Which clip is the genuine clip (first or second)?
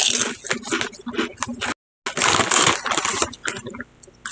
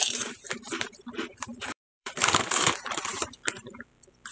first